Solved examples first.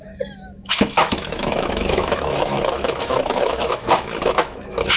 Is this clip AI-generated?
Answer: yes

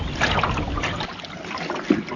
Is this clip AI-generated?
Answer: no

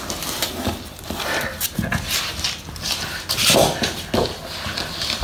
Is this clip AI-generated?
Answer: no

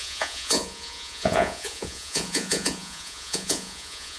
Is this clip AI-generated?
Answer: yes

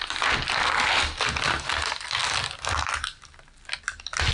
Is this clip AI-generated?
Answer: no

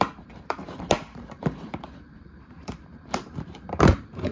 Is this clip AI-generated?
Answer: yes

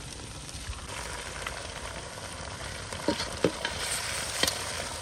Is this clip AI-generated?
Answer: yes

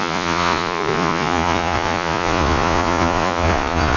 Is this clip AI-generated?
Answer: yes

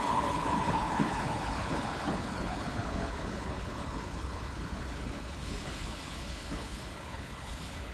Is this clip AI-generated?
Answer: yes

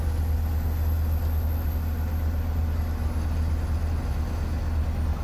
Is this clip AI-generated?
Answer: no